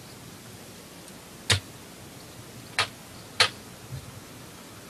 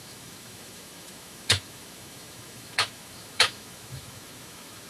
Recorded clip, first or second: first